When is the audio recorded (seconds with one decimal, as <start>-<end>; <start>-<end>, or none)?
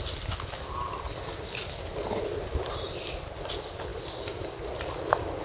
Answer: 0.0-5.4